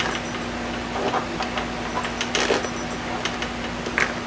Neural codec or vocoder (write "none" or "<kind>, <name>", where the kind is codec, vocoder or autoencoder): none